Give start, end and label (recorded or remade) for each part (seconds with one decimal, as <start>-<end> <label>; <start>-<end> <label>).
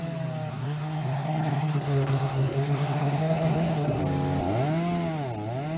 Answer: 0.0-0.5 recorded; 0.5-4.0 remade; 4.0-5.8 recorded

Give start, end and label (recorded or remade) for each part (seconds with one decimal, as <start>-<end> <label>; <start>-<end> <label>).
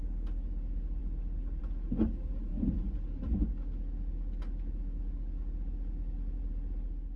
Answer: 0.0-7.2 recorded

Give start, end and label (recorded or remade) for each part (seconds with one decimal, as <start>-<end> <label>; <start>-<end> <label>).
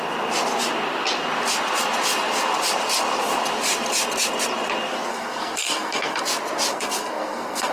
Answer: 0.0-5.1 recorded; 5.1-6.2 remade; 6.2-6.7 recorded; 6.7-7.7 remade